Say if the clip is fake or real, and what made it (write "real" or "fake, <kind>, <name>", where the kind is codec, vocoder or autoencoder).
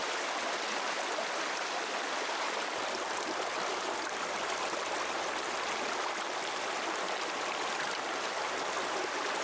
real